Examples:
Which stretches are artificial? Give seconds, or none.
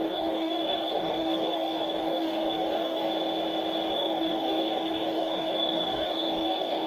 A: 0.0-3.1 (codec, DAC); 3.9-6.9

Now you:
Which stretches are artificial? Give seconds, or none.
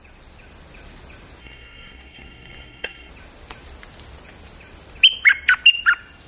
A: 1.4-3.1 (codec, SNAC)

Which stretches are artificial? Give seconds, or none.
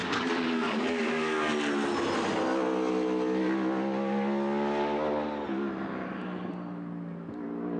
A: 0.0-1.5 (codec, DAC)